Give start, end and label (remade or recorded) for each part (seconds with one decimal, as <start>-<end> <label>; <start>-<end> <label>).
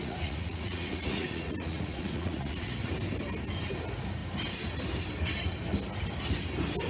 0.0-2.9 remade; 2.9-6.9 recorded